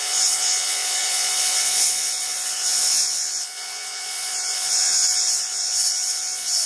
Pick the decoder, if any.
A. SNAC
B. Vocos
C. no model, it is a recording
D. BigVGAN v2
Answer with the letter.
B